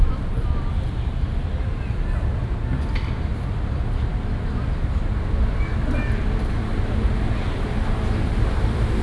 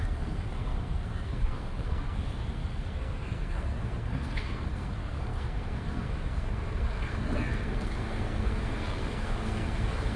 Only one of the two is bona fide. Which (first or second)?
first